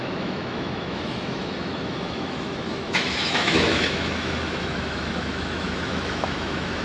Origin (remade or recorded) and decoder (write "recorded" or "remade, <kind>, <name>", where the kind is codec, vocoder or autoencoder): remade, autoencoder, DAC-VAE